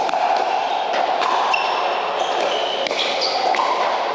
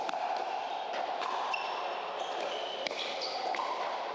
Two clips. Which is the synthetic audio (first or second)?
second